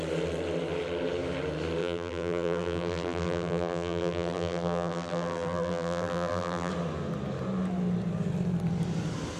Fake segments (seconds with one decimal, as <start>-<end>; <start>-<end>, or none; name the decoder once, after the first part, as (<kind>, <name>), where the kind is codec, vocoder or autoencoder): 1.8-6.7 (vocoder, BigVGAN v2)